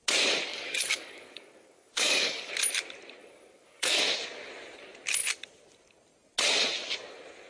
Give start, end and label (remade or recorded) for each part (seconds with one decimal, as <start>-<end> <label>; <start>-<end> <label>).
0.0-0.5 recorded; 0.5-2.5 remade; 2.5-3.2 recorded; 3.2-4.0 remade; 4.0-7.5 recorded